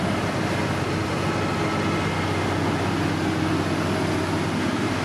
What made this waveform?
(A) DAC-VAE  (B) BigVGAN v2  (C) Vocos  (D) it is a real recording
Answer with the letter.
D